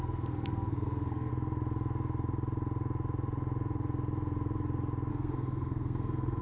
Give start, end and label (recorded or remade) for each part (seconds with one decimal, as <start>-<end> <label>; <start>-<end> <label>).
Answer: 0.0-1.3 remade; 1.3-5.1 recorded; 5.1-6.4 remade